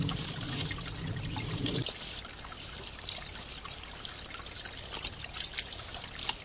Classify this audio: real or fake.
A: real